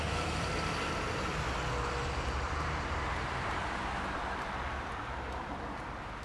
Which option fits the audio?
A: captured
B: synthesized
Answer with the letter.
B